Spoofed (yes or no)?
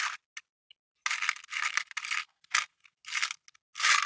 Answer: no